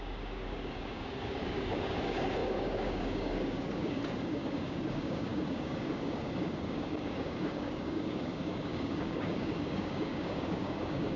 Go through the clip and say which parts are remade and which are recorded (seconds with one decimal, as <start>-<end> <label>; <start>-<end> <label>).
0.0-11.2 remade